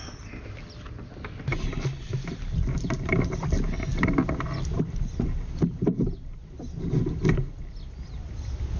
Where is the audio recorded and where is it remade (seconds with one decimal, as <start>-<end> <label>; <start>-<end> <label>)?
0.0-8.8 recorded